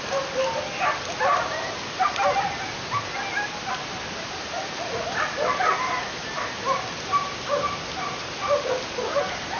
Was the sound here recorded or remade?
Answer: recorded